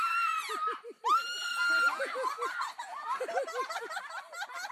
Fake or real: real